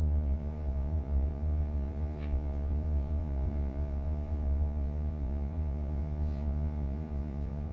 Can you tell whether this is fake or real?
fake